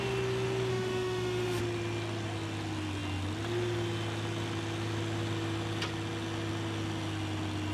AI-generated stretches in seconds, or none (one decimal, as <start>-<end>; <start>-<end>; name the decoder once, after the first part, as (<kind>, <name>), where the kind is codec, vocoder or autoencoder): 0.7-1.6 (autoencoder, DAC-VAE)